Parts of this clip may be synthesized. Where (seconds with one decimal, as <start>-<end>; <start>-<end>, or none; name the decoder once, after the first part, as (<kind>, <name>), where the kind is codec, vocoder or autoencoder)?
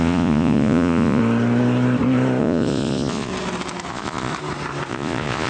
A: 0.0-1.2 (vocoder, Vocos); 2.4-3.3; 3.9-4.3; 4.9-5.5